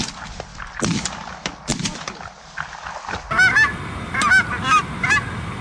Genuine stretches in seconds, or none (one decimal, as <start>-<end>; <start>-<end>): 0.0-5.6